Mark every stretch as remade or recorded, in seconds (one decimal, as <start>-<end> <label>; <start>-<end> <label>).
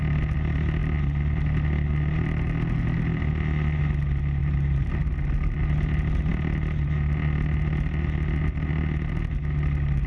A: 0.0-4.4 recorded; 4.4-4.9 remade; 4.9-10.1 recorded